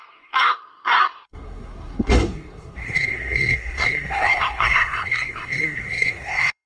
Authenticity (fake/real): fake